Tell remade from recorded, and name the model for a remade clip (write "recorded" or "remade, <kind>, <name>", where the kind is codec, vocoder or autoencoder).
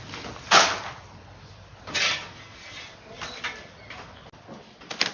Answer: recorded